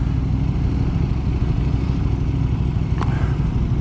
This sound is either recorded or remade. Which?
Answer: recorded